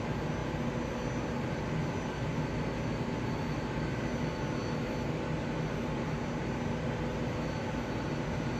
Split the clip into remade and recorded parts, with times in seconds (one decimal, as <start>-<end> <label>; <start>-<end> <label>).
0.0-8.6 recorded